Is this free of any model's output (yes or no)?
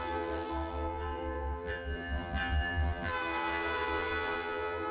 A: no